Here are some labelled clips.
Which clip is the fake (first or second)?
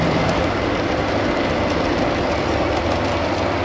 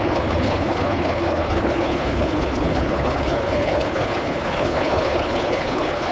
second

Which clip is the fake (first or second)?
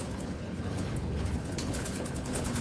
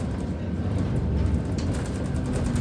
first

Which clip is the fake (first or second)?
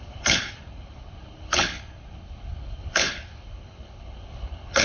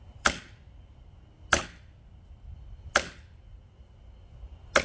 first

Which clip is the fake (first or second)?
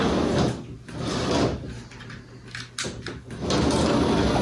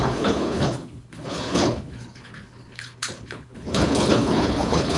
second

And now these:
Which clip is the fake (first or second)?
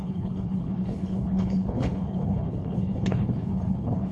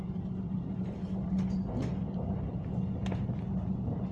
first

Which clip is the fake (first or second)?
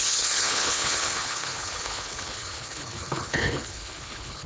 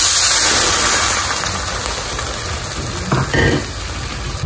first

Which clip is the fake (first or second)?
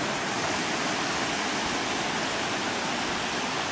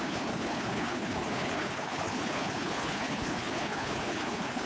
second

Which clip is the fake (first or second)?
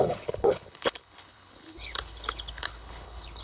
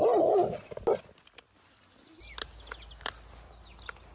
first